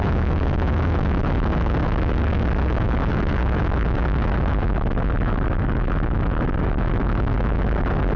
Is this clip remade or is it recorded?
remade